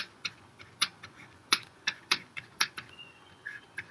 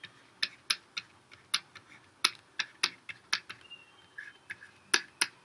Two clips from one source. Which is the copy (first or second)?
first